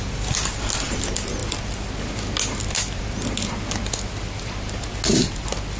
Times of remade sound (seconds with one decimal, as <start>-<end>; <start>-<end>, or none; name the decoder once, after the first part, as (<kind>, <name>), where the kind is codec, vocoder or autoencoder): none

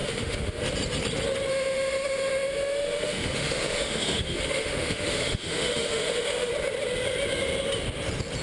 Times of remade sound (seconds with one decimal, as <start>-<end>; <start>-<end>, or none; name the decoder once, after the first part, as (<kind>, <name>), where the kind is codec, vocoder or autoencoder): 0.0-0.6 (autoencoder, DAC-VAE); 1.5-6.5

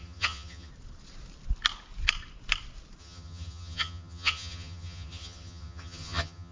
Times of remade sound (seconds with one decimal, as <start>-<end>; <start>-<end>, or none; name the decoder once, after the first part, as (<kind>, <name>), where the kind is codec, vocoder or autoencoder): 0.0-0.7 (vocoder, HiFi-GAN); 3.0-6.5